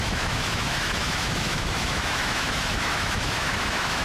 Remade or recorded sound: remade